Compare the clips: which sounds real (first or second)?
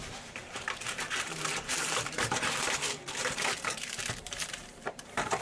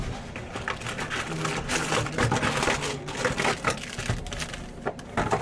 second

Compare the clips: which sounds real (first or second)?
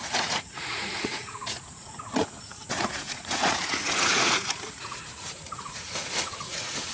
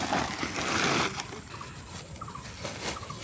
second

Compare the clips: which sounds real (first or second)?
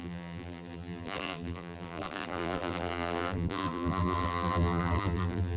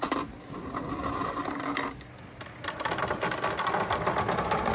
second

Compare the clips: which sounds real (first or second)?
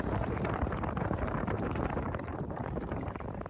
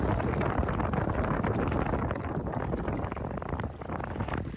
second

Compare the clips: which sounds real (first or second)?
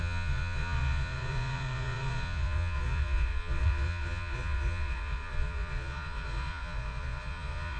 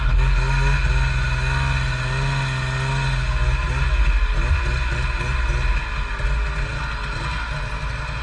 second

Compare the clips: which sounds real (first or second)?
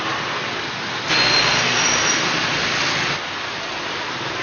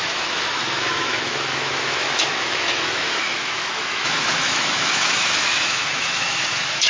first